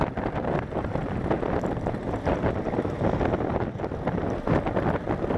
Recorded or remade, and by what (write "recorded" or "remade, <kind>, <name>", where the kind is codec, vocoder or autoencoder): remade, vocoder, BigVGAN v2